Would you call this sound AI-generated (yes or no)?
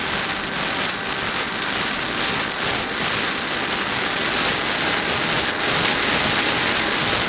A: no